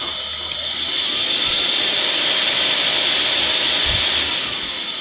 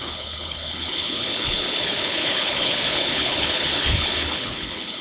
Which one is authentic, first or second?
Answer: first